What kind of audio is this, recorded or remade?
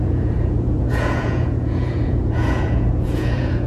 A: remade